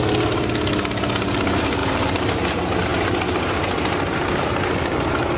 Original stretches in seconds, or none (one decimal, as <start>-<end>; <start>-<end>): 0.0-1.8; 2.3-2.9; 4.5-5.4